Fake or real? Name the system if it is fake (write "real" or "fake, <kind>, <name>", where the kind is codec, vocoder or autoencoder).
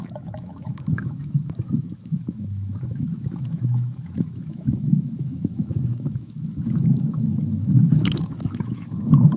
fake, autoencoder, DAC-VAE